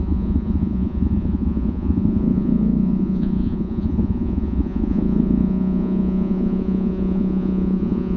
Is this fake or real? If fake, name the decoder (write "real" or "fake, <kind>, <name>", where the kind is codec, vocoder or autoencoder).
fake, vocoder, Vocos